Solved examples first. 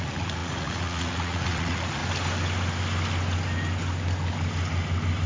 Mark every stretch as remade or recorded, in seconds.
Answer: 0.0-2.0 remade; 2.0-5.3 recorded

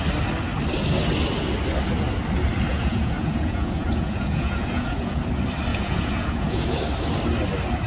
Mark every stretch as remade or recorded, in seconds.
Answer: 0.0-2.7 recorded; 2.7-5.2 remade; 5.2-5.7 recorded; 5.7-6.7 remade; 6.7-7.9 recorded

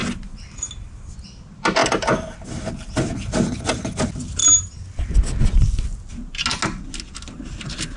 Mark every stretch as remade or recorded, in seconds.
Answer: 0.0-8.0 recorded

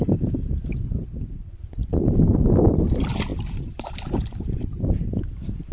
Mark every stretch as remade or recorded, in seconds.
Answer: 0.0-3.3 recorded; 3.3-4.8 remade; 4.8-5.7 recorded

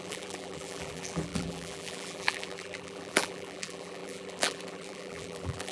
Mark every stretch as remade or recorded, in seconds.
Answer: 0.0-5.7 remade

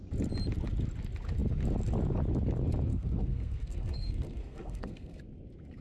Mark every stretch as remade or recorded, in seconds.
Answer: 0.0-2.9 recorded; 2.9-5.2 remade; 5.2-5.8 recorded

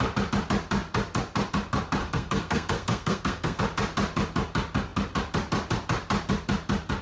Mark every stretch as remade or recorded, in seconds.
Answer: 0.0-2.0 recorded; 2.0-3.6 remade; 3.6-7.0 recorded

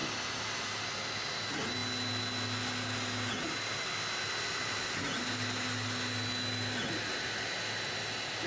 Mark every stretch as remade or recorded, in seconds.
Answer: 0.0-8.5 recorded